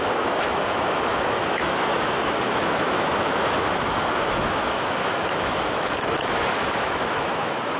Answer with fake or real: fake